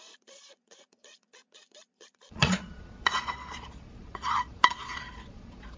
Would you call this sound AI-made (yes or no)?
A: yes